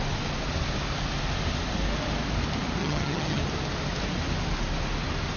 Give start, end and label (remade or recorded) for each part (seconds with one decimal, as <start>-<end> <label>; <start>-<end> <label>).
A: 0.0-2.8 recorded; 2.8-3.4 remade; 3.4-5.4 recorded